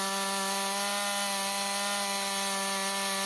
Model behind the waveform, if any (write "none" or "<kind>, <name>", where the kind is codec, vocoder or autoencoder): none